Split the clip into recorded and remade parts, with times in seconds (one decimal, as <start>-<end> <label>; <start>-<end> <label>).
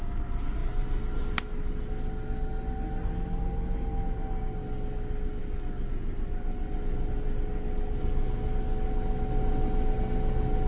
0.0-10.7 recorded